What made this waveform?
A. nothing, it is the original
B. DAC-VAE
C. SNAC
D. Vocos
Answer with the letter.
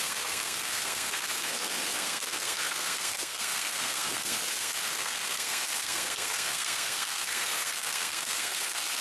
C